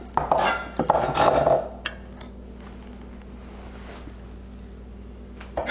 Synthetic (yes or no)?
no